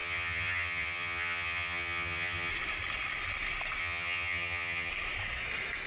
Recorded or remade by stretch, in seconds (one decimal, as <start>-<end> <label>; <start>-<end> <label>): 0.0-2.5 remade; 2.5-3.8 recorded; 3.8-4.9 remade; 4.9-5.9 recorded

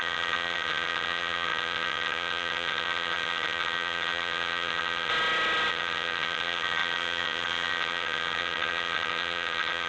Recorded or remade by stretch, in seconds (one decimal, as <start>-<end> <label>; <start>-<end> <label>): 0.0-5.1 remade; 5.1-5.7 recorded; 5.7-9.9 remade

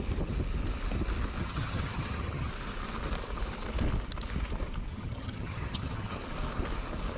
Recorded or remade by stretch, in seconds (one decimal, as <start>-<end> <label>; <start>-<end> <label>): 0.0-1.4 recorded; 1.4-2.5 remade; 2.5-4.9 recorded; 4.9-6.2 remade; 6.2-7.2 recorded